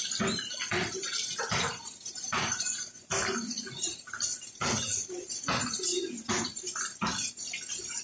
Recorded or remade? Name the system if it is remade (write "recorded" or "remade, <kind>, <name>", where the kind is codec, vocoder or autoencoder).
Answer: recorded